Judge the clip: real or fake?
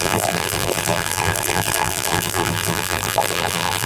fake